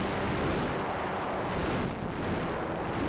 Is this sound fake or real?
real